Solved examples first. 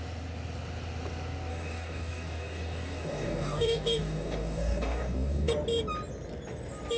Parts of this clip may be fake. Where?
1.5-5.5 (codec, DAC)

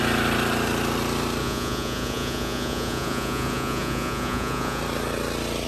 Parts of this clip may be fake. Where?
1.4-4.8 (vocoder, Vocos)

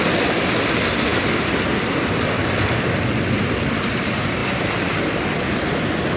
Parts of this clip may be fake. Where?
none

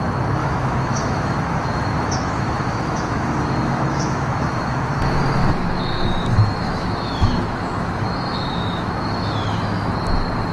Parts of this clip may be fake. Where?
0.4-4.8 (autoencoder, DAC-VAE); 5.4-9.9

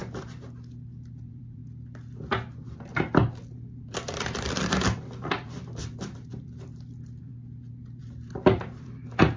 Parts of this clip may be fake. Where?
1.2-1.6 (vocoder, BigVGAN v2); 3.8-7.3; 8.0-9.4

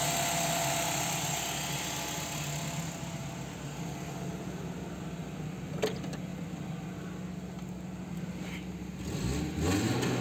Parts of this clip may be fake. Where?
none